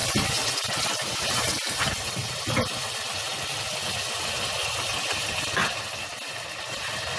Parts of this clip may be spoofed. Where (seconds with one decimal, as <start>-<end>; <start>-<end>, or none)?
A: none